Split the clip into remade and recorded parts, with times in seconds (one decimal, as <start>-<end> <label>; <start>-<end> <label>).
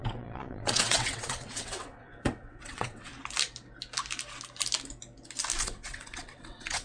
0.0-3.1 remade; 3.1-5.6 recorded; 5.6-6.8 remade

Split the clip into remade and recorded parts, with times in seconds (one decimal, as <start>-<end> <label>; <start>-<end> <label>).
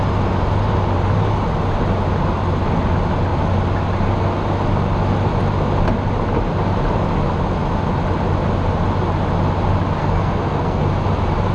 0.0-10.0 recorded; 10.0-10.8 remade; 10.8-11.5 recorded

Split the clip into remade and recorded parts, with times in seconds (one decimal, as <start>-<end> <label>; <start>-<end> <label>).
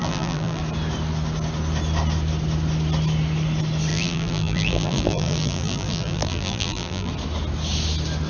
0.0-0.6 remade; 0.6-3.9 recorded; 3.9-7.1 remade; 7.1-8.3 recorded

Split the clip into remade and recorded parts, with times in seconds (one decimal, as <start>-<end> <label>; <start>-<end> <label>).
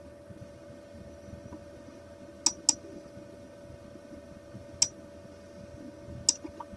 0.0-6.8 recorded